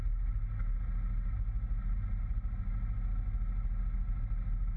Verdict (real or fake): real